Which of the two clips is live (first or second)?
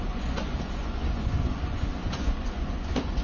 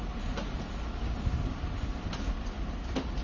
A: second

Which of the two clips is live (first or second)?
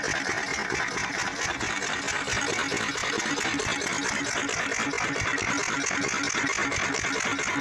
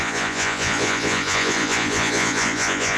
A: first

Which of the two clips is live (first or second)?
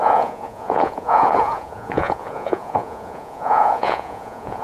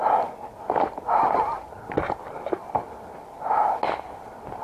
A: second